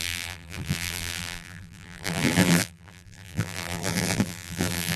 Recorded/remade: remade